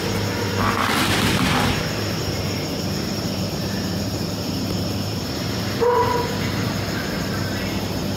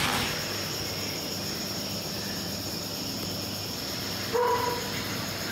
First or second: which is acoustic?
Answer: second